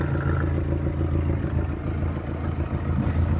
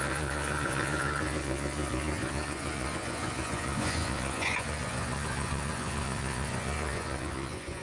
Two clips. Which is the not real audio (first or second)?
second